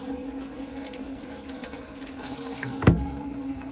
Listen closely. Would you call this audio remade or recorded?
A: remade